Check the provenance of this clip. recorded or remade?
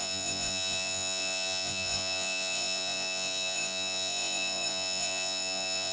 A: remade